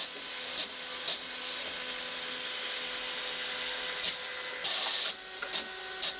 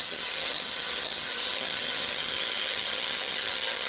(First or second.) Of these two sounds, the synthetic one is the second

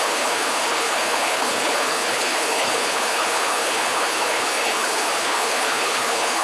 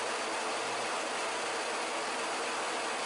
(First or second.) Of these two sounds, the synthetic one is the first